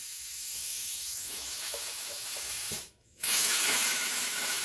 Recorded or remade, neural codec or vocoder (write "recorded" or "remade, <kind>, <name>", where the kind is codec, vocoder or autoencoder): remade, autoencoder, DAC-VAE